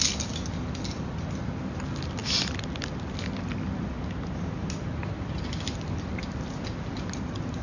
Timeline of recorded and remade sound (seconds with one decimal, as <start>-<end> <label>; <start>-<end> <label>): 0.0-7.6 recorded